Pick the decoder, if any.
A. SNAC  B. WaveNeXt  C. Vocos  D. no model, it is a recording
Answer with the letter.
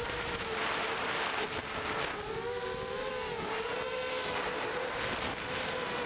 D